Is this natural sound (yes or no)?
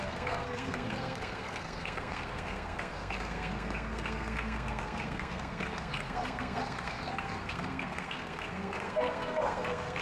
no